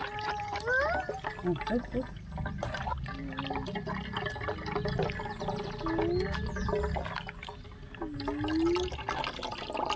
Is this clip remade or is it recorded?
recorded